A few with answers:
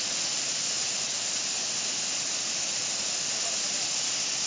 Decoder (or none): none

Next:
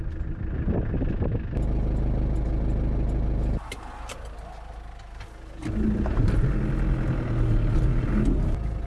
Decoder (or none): none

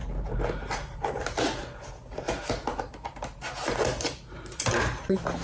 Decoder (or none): none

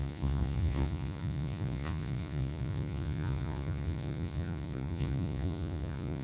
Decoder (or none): vocoder, Vocos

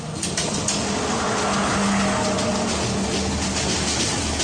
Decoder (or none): none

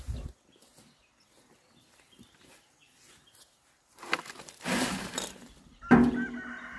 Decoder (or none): none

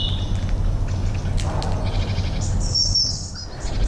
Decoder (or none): none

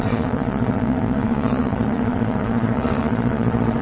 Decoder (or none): vocoder, Vocos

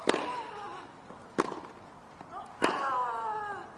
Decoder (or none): none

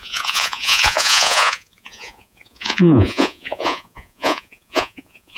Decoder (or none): vocoder, Vocos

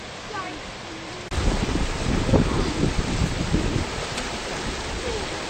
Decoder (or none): none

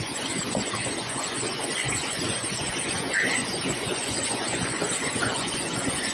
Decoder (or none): vocoder, Vocos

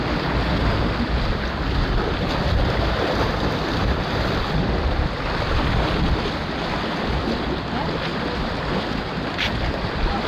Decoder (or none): none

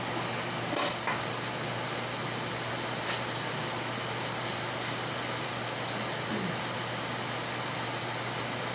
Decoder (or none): none